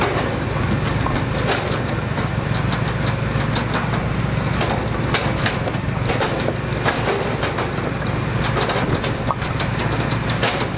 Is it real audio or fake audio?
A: real